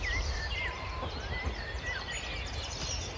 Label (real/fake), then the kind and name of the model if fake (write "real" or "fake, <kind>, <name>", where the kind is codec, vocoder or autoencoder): real